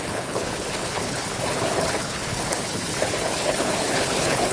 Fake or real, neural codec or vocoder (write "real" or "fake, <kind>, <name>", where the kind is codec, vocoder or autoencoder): fake, codec, HILCodec